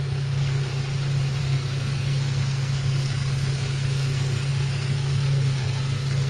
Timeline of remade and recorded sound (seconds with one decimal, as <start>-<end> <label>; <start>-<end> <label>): 0.0-0.7 remade; 0.7-1.4 recorded; 1.4-6.3 remade